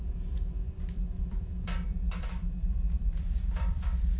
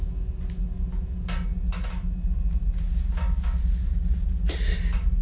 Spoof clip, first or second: first